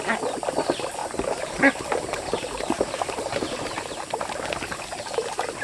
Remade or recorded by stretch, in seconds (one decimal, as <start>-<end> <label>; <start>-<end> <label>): 0.0-1.0 recorded; 1.0-4.4 remade; 4.4-5.6 recorded